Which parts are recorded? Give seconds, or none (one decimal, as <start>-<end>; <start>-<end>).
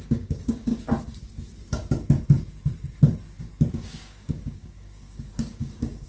0.7-3.7